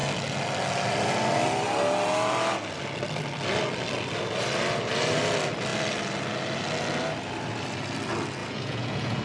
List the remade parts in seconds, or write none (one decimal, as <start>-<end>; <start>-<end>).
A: 8.4-9.2